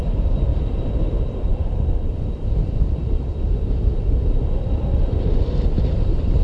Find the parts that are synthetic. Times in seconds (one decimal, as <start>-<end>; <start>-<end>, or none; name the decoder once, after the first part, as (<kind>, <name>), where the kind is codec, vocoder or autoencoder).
0.0-0.5 (vocoder, BigVGAN v2); 1.0-6.4